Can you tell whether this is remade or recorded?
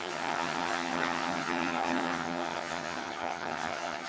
remade